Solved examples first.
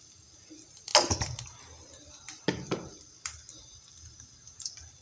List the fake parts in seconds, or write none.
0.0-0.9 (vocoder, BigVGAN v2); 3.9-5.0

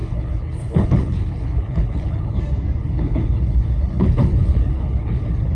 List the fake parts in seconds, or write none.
0.0-2.4 (codec, HILCodec); 2.8-5.5

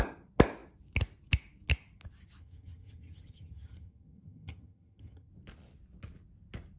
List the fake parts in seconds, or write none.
2.4-5.3 (vocoder, HiFi-GAN)

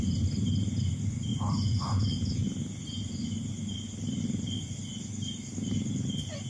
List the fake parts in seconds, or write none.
none